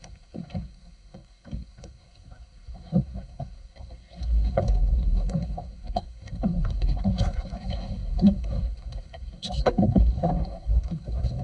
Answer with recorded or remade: remade